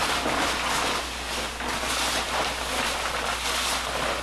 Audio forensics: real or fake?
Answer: real